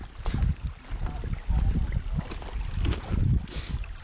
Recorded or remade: recorded